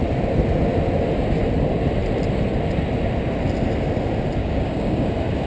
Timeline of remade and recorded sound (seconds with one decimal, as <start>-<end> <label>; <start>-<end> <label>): 0.0-4.4 recorded; 4.4-5.1 remade; 5.1-5.5 recorded